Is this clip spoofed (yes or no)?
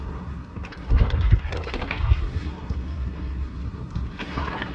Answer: yes